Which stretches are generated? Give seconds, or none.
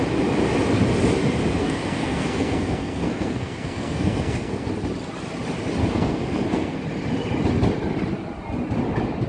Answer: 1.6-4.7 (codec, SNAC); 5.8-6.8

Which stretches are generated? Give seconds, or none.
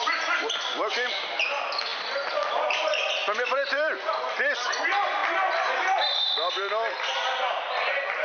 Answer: 0.0-1.9 (vocoder, BigVGAN v2); 2.6-5.2; 5.8-8.2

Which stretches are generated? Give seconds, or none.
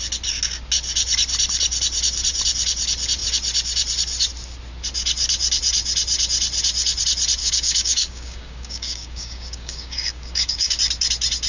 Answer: 7.4-10.8 (codec, DAC)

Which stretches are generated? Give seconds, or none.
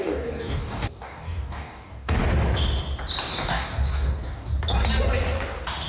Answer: 0.0-2.2 (codec, DAC); 3.2-4.5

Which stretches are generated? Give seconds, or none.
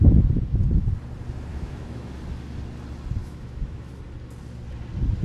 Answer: 1.5-2.1 (autoencoder, DAC-VAE); 3.2-3.9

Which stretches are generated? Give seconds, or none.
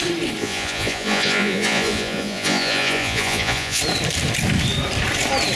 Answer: 0.4-3.8 (vocoder, Vocos)